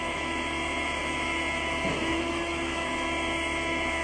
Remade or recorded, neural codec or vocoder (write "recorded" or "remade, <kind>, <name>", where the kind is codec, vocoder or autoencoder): remade, autoencoder, DAC-VAE